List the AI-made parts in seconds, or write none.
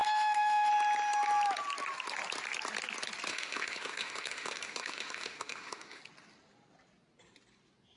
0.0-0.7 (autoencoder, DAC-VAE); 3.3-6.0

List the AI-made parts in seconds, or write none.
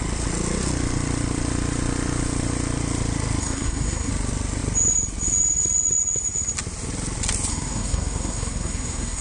3.4-4.1 (codec, SNAC); 7.5-9.2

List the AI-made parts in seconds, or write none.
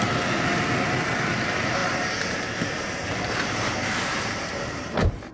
0.0-0.5 (vocoder, BigVGAN v2); 1.3-5.3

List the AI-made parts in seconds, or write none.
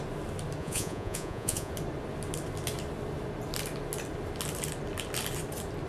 0.6-1.7 (vocoder, Vocos)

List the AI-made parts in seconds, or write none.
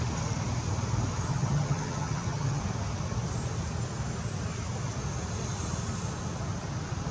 1.3-2.6 (vocoder, HiFi-GAN)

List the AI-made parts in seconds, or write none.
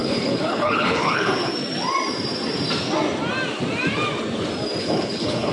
0.0-1.5 (codec, HILCodec); 4.8-5.5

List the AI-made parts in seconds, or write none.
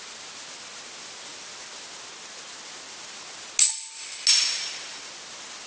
none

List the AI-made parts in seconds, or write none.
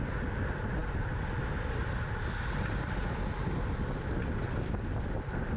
none